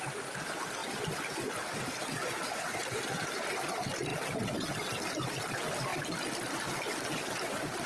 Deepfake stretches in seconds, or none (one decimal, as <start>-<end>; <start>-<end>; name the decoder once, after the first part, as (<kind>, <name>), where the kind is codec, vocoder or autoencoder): 0.8-2.3 (vocoder, BigVGAN v2)